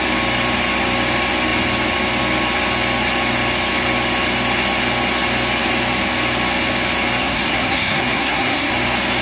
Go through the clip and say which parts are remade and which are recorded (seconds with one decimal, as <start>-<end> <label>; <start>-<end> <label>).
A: 0.0-7.2 recorded; 7.2-8.7 remade; 8.7-9.2 recorded